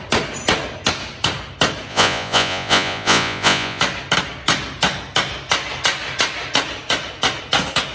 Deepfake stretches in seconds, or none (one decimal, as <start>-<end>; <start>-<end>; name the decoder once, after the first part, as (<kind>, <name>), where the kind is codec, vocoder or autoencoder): 1.9-3.8 (vocoder, Vocos)